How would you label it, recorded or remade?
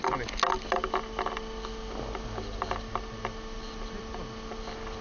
recorded